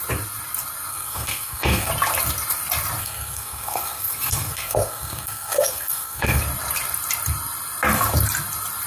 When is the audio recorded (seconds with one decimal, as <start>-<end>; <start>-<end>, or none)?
0.0-0.9; 1.9-3.0; 6.4-8.9